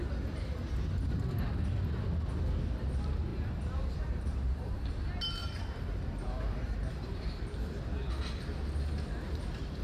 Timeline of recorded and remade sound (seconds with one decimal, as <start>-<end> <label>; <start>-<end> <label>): 0.0-3.3 recorded; 3.3-4.9 remade; 4.9-5.4 recorded; 5.4-7.4 remade; 7.4-9.8 recorded